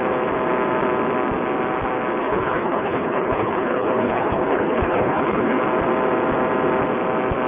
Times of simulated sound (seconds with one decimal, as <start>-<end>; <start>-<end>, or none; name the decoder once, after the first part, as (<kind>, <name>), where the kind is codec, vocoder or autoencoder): 2.2-5.6 (codec, HILCodec)